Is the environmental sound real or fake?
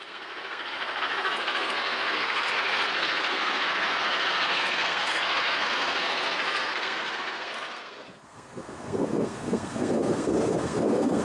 fake